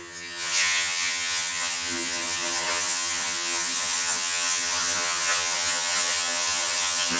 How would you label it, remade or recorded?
remade